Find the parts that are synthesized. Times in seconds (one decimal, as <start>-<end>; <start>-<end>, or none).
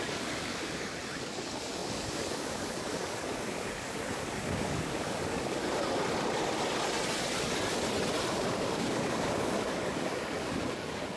0.0-5.6; 8.3-11.2